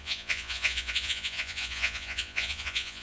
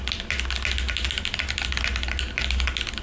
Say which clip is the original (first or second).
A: second